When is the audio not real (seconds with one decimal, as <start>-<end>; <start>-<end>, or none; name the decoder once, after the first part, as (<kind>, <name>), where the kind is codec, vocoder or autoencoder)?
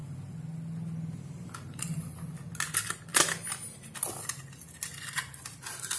none